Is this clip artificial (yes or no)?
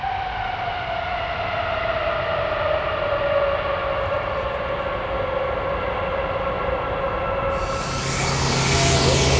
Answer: no